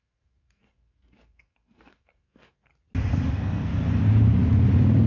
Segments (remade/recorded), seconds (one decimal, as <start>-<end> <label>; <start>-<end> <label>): 0.0-2.7 remade; 2.7-3.3 recorded; 3.3-3.7 remade; 3.7-5.1 recorded